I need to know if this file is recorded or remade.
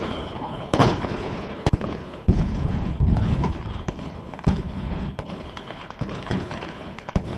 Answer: remade